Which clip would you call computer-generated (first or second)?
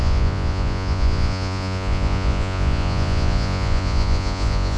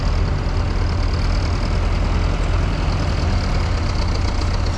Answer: first